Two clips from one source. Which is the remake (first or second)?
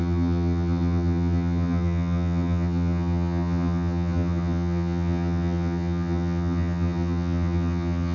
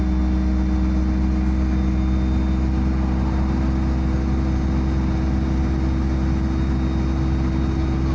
first